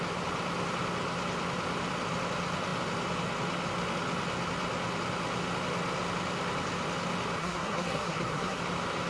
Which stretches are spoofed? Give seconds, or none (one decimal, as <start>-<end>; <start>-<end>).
7.4-8.6